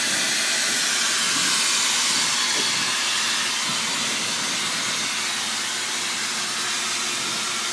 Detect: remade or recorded recorded